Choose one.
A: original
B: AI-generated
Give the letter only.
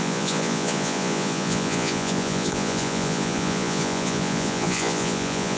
B